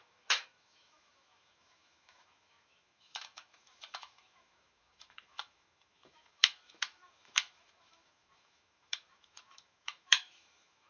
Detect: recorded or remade remade